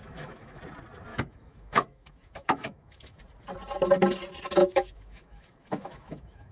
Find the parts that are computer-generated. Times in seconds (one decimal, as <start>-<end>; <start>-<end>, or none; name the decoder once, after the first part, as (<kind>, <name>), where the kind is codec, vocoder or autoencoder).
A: 0.0-0.6 (autoencoder, DAC-VAE); 1.1-3.2; 4.6-6.5